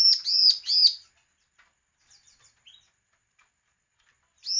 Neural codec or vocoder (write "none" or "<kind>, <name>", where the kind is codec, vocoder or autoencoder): none